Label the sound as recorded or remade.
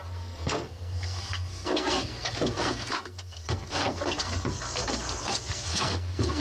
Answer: remade